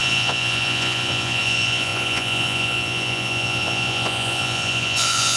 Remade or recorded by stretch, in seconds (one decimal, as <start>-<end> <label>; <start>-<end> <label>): 0.0-5.4 remade